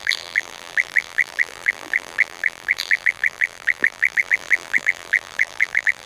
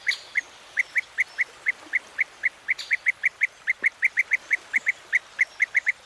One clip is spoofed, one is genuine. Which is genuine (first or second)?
second